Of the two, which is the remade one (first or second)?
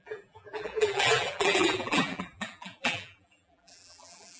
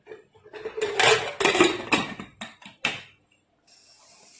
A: first